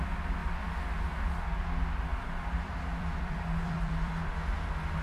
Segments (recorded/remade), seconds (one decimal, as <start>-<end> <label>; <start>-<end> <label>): 0.0-2.1 recorded; 2.1-4.3 remade; 4.3-5.0 recorded